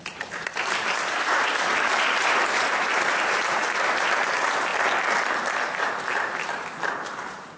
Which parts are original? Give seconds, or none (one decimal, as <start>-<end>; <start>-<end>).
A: 4.7-5.8